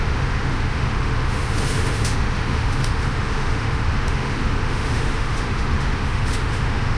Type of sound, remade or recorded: remade